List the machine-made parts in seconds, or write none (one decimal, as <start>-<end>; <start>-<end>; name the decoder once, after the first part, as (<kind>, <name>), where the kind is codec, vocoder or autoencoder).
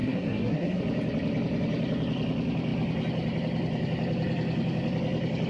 0.0-0.8 (codec, SNAC)